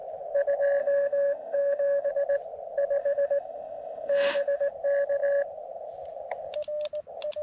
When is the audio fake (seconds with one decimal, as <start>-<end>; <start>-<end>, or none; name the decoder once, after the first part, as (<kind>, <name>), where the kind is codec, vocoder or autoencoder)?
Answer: 0.8-2.1 (autoencoder, DAC-VAE); 3.0-4.7